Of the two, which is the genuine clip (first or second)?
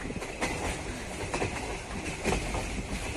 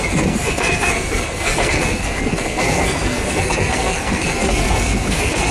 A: first